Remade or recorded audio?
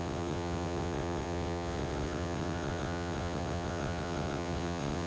remade